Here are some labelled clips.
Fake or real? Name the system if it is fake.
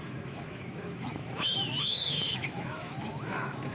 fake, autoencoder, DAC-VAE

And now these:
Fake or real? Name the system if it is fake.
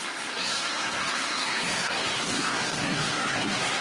fake, codec, SNAC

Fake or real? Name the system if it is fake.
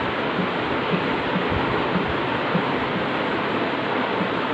real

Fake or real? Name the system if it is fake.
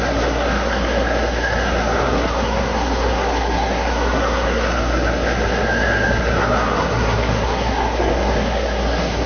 fake, codec, SNAC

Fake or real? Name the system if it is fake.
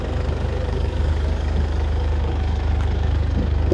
fake, codec, DAC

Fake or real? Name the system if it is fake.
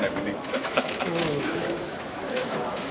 fake, autoencoder, DAC-VAE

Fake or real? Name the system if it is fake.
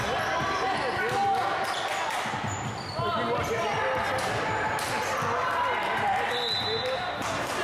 real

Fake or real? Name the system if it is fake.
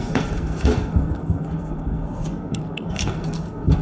fake, codec, SNAC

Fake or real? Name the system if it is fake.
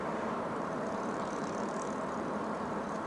fake, vocoder, BigVGAN v2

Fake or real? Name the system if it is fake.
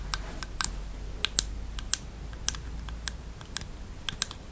real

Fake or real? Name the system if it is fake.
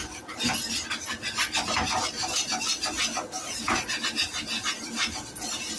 real